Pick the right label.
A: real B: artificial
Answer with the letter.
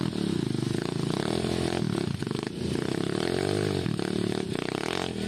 A